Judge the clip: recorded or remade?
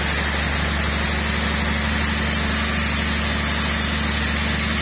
recorded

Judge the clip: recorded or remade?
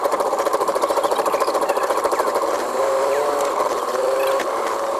remade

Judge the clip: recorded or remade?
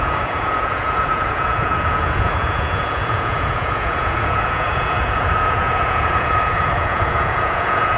remade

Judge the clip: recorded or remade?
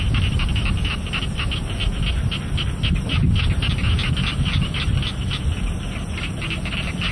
recorded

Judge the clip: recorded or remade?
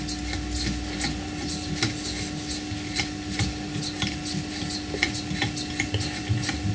recorded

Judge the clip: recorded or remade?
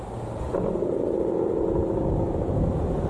recorded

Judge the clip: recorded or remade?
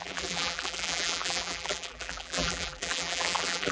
remade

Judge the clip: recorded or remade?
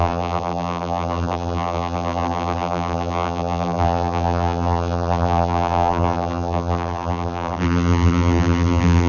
remade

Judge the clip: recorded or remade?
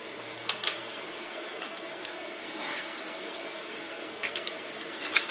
remade